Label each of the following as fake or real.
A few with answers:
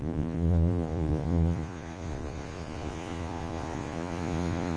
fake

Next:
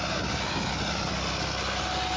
real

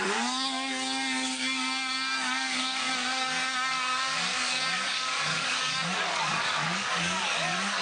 fake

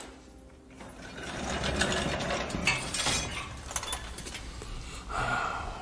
real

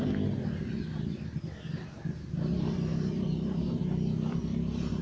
real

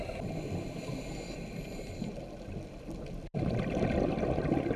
real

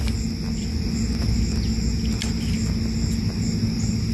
real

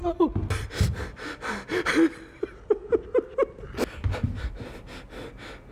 real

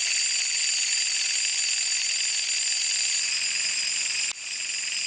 real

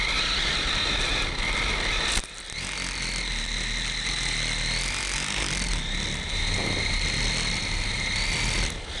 real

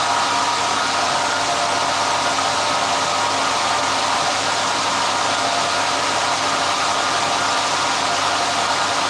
real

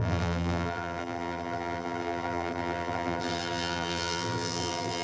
fake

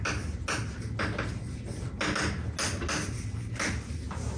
real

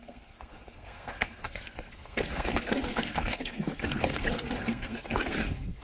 fake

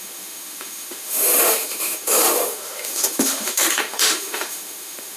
fake